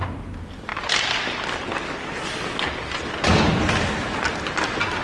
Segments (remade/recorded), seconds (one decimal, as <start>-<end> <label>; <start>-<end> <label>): 0.0-5.0 recorded